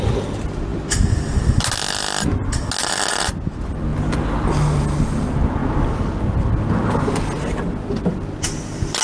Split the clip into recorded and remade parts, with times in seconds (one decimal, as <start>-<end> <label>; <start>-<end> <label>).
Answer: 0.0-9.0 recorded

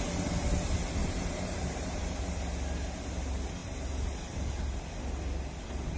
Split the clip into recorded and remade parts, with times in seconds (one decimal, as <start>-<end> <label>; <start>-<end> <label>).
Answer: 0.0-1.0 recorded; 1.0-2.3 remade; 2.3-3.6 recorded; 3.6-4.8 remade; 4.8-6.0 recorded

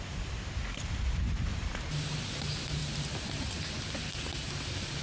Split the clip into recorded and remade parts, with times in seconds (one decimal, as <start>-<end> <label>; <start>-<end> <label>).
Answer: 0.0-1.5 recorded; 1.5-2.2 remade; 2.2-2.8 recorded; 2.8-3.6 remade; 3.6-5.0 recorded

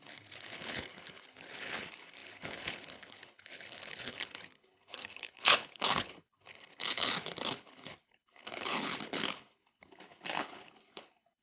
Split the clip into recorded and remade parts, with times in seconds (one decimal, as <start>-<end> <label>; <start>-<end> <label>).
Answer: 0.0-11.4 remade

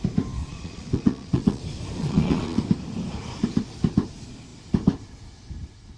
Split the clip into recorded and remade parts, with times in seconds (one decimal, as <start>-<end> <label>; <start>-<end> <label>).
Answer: 0.0-0.4 recorded; 0.4-1.6 remade; 1.6-2.0 recorded; 2.0-2.6 remade; 2.6-6.0 recorded

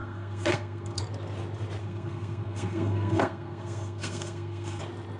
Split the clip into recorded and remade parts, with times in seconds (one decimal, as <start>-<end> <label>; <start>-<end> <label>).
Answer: 0.0-1.0 remade; 1.0-1.8 recorded; 1.8-4.8 remade; 4.8-5.2 recorded

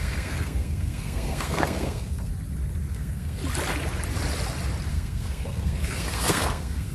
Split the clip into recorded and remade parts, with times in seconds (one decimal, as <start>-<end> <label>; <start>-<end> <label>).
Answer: 0.0-2.3 remade; 2.3-2.9 recorded; 2.9-3.4 remade; 3.4-4.9 recorded; 4.9-6.9 remade